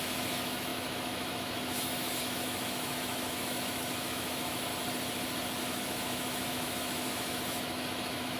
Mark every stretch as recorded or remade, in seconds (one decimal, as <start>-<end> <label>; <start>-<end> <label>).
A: 0.0-4.7 remade; 4.7-5.6 recorded; 5.6-8.4 remade

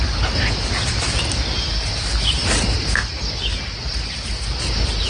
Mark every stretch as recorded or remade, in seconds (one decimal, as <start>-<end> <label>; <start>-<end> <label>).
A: 0.0-5.1 recorded

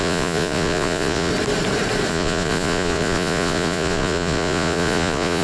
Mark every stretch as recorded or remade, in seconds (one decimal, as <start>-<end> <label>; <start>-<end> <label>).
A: 0.0-1.3 remade; 1.3-2.1 recorded; 2.1-5.4 remade

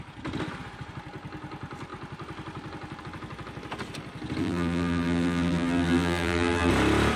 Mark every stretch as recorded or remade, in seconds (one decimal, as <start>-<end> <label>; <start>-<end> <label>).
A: 0.0-4.4 recorded; 4.4-6.7 remade; 6.7-7.2 recorded

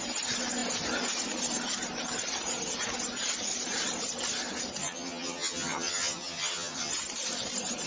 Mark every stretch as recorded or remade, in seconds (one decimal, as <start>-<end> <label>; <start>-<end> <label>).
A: 0.0-4.8 recorded; 4.8-6.9 remade; 6.9-7.9 recorded